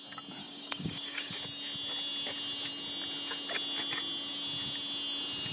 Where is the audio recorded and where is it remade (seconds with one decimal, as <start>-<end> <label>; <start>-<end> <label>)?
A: 0.0-0.4 recorded; 0.4-1.3 remade; 1.3-5.5 recorded